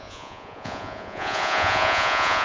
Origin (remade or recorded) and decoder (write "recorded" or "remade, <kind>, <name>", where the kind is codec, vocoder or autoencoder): remade, vocoder, Vocos